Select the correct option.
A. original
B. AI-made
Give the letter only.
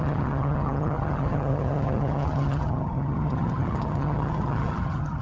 B